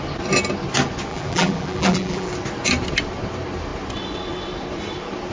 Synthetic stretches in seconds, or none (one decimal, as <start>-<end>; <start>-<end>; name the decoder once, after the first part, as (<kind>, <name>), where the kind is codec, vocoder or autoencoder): 1.1-2.3 (vocoder, BigVGAN v2)